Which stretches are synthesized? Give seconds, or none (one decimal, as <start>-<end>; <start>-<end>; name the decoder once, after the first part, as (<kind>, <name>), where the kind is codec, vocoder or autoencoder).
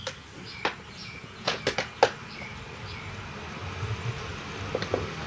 1.0-1.6 (vocoder, Vocos)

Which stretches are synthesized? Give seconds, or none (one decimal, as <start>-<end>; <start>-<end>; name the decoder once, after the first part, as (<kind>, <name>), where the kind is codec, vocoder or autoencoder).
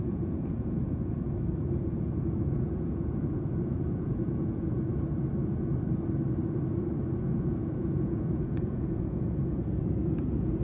0.0-4.9 (vocoder, Vocos); 7.2-10.6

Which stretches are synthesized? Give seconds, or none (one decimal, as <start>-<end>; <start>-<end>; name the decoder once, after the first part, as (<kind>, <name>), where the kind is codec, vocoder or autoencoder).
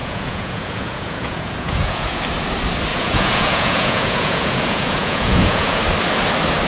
0.0-2.2 (vocoder, Vocos); 2.9-5.8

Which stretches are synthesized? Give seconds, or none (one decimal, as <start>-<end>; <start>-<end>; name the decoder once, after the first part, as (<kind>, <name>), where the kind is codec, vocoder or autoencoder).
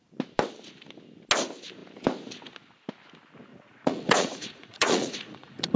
3.5-5.8 (vocoder, Vocos)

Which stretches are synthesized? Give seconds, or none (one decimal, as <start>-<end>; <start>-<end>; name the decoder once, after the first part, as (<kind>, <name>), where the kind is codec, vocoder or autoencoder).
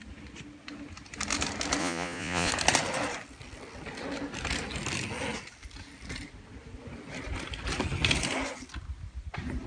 1.8-2.5 (vocoder, Vocos)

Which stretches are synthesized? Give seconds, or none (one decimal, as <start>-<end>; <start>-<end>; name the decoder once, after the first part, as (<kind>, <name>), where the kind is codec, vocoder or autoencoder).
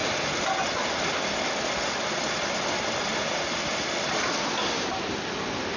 none